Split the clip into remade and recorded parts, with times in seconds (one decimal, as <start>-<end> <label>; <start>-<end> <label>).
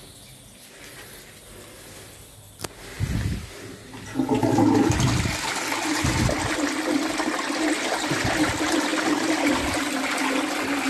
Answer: 0.0-10.9 recorded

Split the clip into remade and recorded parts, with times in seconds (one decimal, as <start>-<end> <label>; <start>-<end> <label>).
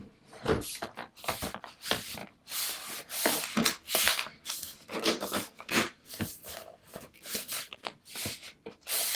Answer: 0.0-3.5 recorded; 3.5-8.0 remade; 8.0-9.1 recorded